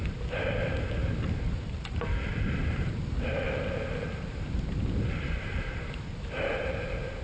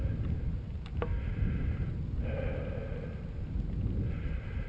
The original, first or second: second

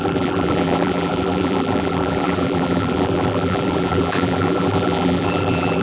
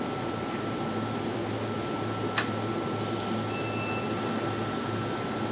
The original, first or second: second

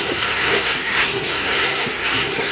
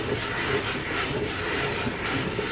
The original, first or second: second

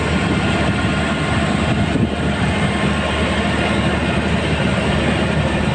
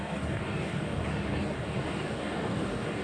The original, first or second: first